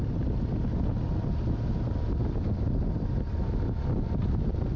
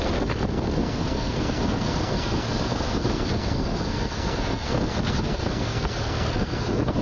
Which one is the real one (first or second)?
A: first